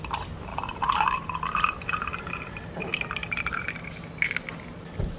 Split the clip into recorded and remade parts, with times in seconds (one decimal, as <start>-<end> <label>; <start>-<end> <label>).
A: 0.0-0.5 recorded; 0.5-3.6 remade; 3.6-5.2 recorded